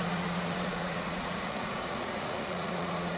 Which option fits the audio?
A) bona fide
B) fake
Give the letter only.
B